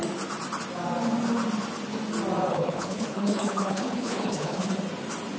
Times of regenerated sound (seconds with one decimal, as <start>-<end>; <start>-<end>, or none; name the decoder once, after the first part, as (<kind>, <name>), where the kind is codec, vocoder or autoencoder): 2.5-4.7 (codec, HILCodec)